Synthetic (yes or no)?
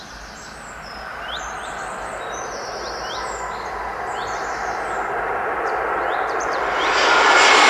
no